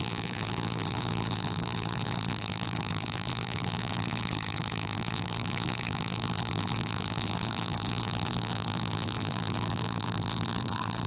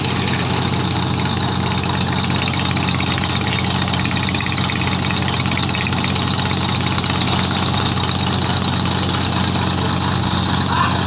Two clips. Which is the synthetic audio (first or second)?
first